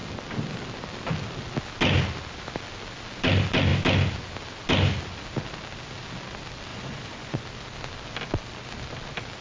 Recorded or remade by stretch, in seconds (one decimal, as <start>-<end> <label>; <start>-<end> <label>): 0.0-6.7 recorded; 6.7-7.4 remade; 7.4-9.4 recorded